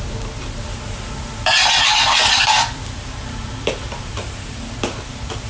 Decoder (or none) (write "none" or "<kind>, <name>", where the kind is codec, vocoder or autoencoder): vocoder, BigVGAN v2